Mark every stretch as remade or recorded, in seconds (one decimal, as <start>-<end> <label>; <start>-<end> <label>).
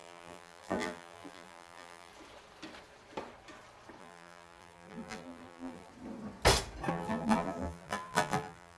0.0-2.1 remade; 2.1-4.0 recorded; 4.0-5.9 remade; 5.9-6.9 recorded; 6.9-8.8 remade